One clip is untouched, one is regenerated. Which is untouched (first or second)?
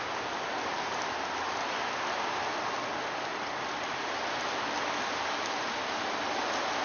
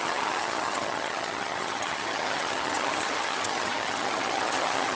first